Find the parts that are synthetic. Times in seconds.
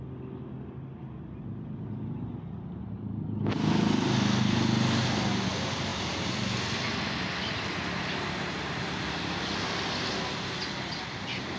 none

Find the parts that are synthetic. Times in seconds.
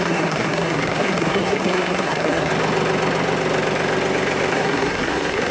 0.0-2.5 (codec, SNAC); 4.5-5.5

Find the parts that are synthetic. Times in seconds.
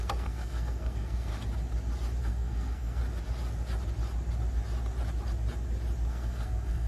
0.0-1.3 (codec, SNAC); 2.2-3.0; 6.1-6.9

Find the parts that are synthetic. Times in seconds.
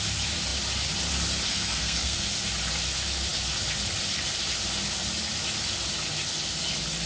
1.5-2.3 (codec, SNAC)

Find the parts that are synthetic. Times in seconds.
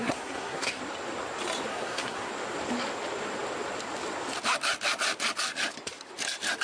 0.0-0.8 (codec, SNAC); 1.7-2.3